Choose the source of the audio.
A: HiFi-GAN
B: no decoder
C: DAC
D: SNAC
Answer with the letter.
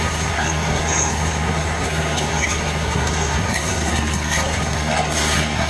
D